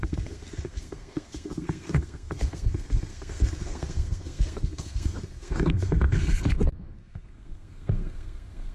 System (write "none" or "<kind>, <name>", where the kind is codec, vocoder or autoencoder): codec, SNAC